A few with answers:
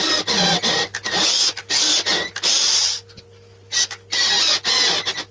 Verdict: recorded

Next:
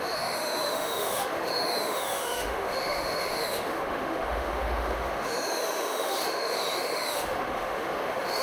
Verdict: remade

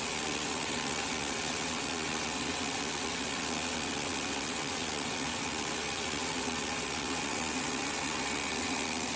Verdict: remade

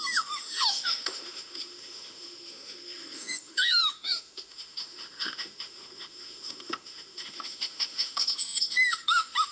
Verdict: remade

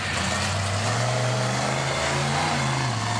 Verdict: recorded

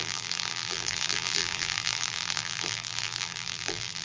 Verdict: remade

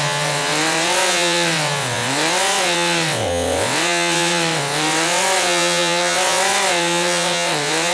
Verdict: remade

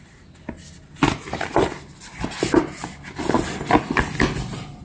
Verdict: recorded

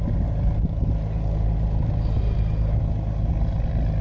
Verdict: recorded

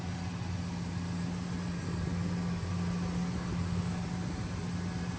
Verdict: recorded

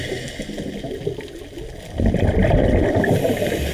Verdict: recorded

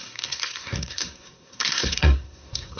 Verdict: remade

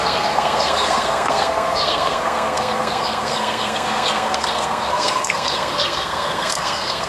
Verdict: remade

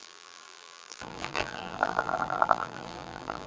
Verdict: remade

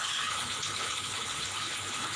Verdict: remade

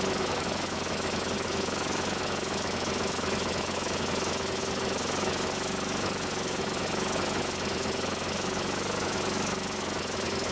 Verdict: remade